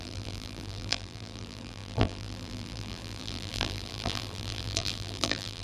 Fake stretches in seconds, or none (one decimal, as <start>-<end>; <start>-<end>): 0.0-5.6

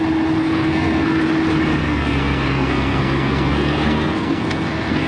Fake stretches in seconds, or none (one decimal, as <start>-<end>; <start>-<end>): 0.4-1.2; 1.8-5.1

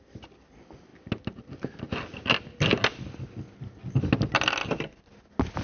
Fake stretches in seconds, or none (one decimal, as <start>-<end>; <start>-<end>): none

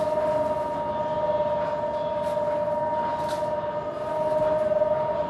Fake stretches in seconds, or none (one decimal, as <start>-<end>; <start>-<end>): none

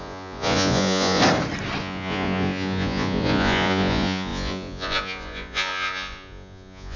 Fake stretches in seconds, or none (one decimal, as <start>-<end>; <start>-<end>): 0.0-1.2; 1.8-7.0

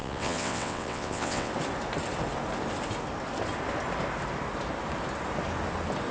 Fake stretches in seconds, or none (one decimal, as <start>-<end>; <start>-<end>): 0.0-1.5

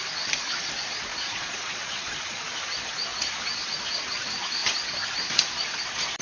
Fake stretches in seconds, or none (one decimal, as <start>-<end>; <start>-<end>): 1.1-2.5

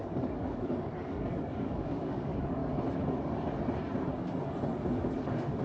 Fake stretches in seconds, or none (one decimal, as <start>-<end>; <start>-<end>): 0.0-2.6; 4.7-5.6